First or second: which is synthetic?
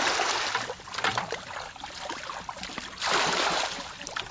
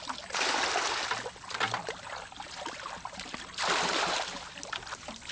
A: first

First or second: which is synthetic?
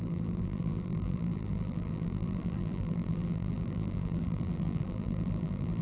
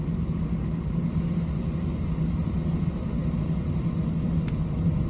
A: first